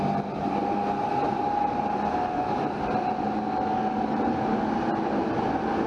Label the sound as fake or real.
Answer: real